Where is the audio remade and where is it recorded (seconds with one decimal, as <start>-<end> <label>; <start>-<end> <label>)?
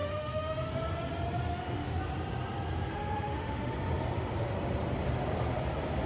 0.0-0.7 remade; 0.7-1.5 recorded; 1.5-2.0 remade; 2.0-2.9 recorded; 2.9-3.7 remade; 3.7-6.1 recorded